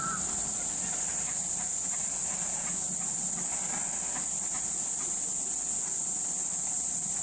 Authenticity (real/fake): real